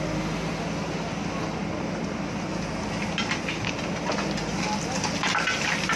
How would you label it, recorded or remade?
recorded